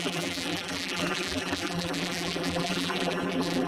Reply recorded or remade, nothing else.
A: remade